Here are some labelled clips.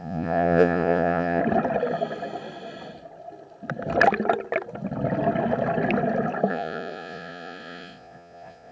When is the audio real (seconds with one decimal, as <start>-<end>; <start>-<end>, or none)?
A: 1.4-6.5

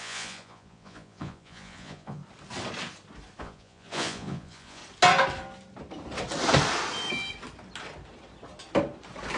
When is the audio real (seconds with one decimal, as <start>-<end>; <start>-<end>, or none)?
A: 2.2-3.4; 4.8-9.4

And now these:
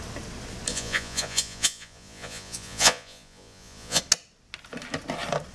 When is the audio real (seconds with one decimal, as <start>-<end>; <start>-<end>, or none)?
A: 0.0-0.7; 4.0-5.5